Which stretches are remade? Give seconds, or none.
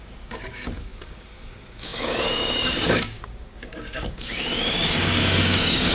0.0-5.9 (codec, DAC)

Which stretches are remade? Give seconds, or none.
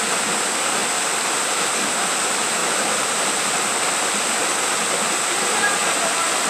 2.6-3.3 (vocoder, BigVGAN v2)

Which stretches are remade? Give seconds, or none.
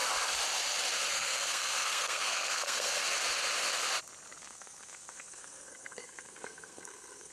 1.1-3.0 (codec, SNAC); 4.4-7.3